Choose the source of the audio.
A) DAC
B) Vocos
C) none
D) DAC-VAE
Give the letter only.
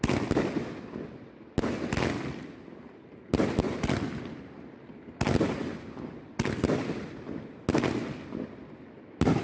C